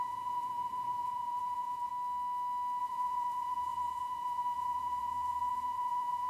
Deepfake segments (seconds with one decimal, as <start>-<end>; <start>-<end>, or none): 0.0-1.9; 2.8-6.3